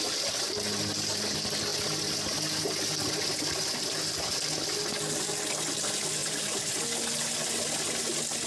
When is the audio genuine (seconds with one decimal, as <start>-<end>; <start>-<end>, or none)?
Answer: 0.0-6.2; 6.8-8.5